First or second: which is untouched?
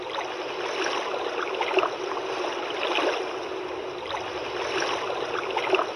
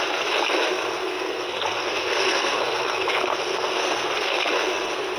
first